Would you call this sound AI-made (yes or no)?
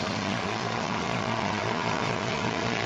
yes